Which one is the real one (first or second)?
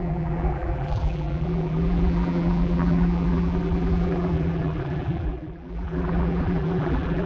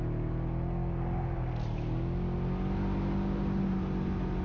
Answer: second